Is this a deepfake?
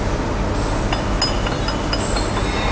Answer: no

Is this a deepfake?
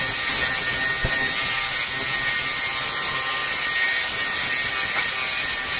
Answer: no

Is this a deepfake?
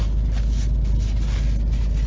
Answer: no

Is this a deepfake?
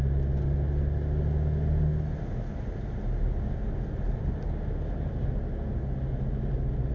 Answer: no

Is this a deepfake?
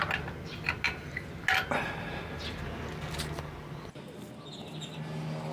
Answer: no